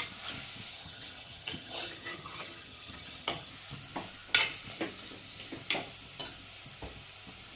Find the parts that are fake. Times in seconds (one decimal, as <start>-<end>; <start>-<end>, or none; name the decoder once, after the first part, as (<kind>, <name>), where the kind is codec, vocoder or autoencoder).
0.7-3.5 (vocoder, HiFi-GAN)